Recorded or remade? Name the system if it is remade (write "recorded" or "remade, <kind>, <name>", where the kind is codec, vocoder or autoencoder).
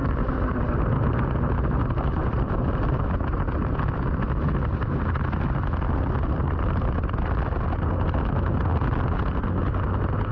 recorded